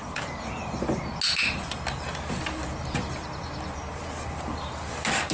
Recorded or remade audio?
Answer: recorded